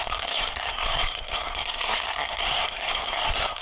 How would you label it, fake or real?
fake